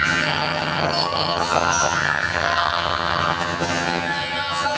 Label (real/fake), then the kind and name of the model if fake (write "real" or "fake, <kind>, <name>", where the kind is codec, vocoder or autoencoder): fake, vocoder, HiFi-GAN